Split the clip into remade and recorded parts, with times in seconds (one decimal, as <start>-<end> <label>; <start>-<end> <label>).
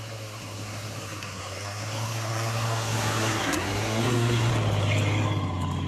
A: 0.0-4.5 remade; 4.5-5.9 recorded